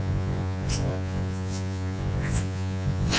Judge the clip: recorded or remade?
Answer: remade